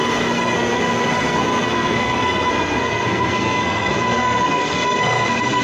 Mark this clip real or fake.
fake